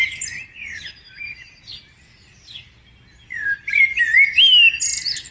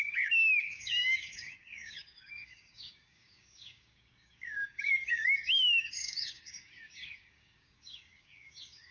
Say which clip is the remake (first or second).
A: second